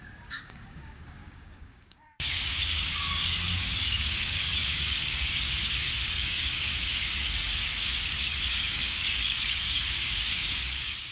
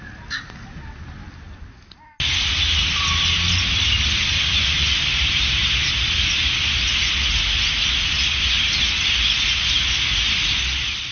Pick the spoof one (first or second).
first